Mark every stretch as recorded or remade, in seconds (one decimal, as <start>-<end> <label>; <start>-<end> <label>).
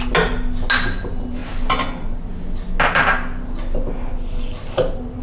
0.0-5.2 recorded